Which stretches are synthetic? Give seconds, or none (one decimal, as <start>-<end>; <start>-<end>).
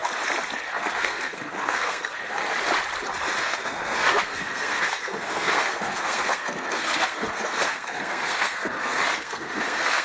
0.7-2.4; 3.4-10.0